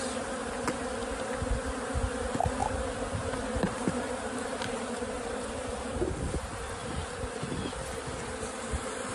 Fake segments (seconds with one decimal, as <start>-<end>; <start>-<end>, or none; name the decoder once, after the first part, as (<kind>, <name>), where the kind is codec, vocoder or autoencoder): 2.6-6.3 (vocoder, BigVGAN v2); 6.8-9.1